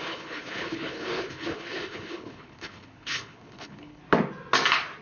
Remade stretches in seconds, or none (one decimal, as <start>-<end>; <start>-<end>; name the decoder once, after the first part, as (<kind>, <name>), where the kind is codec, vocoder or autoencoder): 0.0-4.0 (codec, HILCodec)